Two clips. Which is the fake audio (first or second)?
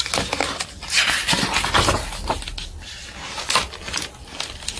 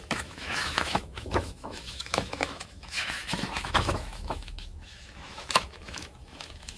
second